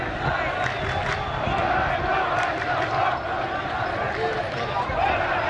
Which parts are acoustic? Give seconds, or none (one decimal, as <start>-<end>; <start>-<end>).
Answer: 0.0-5.5